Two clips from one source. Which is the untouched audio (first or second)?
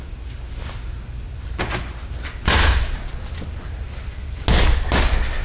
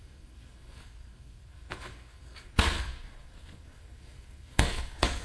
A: first